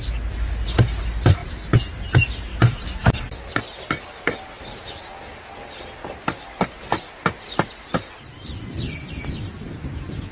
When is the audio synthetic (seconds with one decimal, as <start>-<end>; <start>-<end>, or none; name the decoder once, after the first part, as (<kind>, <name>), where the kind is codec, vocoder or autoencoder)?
none